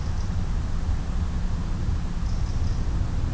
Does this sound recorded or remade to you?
recorded